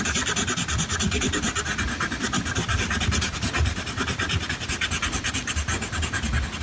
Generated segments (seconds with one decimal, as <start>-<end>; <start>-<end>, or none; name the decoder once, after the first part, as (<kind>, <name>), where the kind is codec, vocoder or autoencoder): none